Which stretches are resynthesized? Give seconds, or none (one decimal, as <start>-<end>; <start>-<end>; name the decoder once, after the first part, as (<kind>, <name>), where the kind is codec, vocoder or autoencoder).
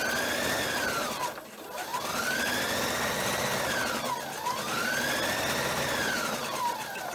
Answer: none